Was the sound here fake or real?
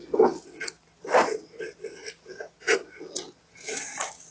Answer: real